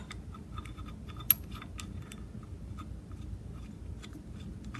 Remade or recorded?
recorded